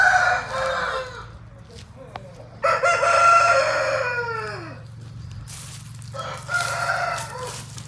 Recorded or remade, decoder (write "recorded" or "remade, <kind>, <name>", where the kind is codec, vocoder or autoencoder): recorded